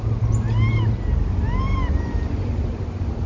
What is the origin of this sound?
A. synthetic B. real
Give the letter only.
B